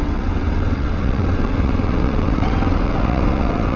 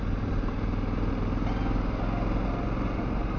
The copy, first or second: first